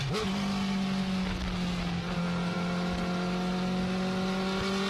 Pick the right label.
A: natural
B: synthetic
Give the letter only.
A